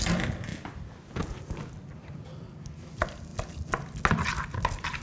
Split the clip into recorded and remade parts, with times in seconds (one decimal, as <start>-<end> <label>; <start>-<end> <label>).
0.0-5.0 recorded